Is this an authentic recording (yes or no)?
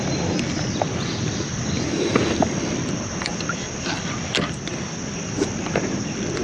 no